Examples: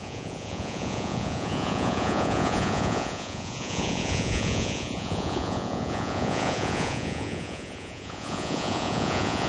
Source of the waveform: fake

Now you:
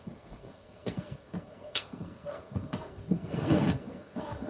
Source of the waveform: fake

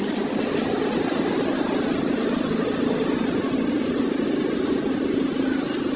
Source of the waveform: real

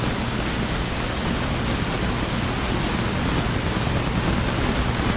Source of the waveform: real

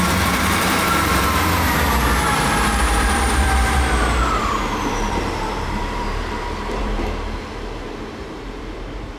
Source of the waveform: fake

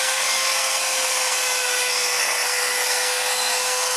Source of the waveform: fake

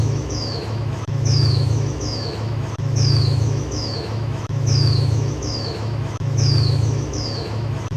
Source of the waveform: fake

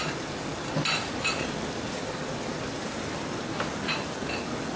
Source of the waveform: real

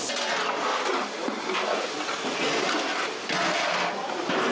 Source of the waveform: real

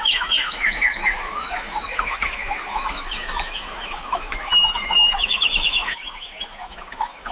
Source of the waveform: fake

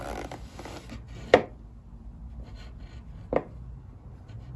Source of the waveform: real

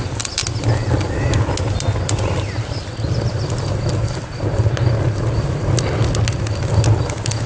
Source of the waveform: real